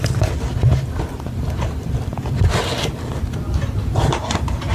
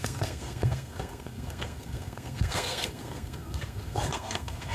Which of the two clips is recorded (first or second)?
first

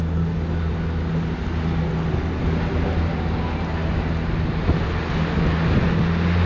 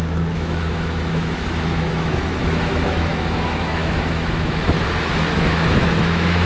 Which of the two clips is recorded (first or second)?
first